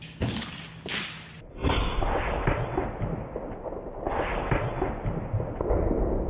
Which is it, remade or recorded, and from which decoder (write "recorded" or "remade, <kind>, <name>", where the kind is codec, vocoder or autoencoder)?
recorded